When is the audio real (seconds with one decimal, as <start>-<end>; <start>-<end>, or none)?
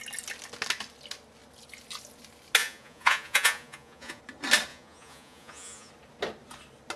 0.0-2.6; 4.2-4.7; 5.9-7.0